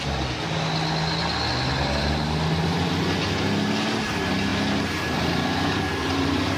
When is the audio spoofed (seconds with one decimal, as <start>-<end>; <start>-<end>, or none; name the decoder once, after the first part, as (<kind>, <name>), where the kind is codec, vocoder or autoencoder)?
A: 4.5-6.6 (vocoder, BigVGAN v2)

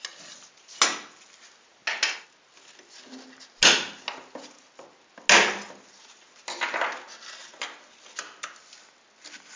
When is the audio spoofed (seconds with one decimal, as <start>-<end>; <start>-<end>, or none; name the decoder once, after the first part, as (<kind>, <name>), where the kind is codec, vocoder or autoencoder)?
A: none